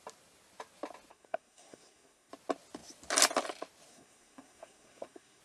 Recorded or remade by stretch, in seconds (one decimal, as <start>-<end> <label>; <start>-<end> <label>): 0.0-1.1 recorded; 1.1-2.3 remade; 2.3-3.9 recorded; 3.9-5.4 remade